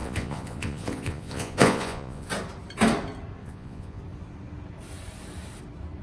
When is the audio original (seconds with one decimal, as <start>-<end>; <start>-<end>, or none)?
2.3-3.4; 4.0-6.0